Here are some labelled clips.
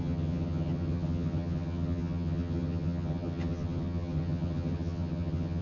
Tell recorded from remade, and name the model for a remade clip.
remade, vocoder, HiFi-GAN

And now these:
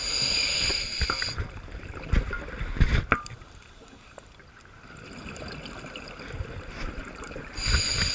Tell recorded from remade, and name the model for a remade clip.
recorded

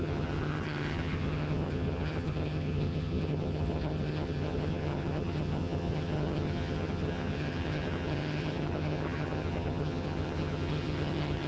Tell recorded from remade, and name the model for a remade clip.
remade, vocoder, HiFi-GAN